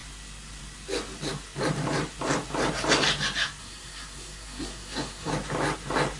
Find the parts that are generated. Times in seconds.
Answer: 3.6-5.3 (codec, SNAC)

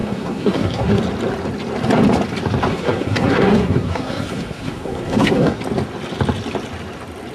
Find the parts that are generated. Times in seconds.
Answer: 0.0-1.0 (codec, SNAC); 2.7-5.6

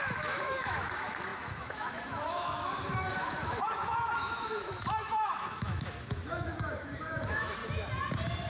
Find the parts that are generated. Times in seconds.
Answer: 0.0-7.6 (autoencoder, DAC-VAE)

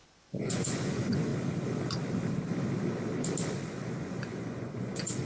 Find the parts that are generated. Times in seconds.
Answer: 0.0-1.3 (vocoder, Vocos); 3.7-5.2

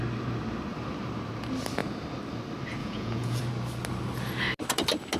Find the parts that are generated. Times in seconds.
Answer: 2.8-3.4 (vocoder, Vocos)

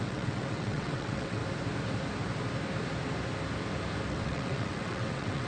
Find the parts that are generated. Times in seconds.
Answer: 0.0-1.4 (vocoder, WaveNeXt); 4.1-5.5